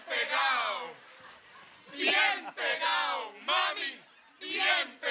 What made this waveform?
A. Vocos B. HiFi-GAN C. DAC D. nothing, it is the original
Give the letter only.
D